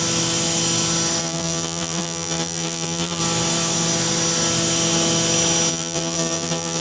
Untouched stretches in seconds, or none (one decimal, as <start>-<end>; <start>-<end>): 0.0-1.2; 3.2-5.7